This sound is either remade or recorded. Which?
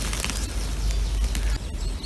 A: recorded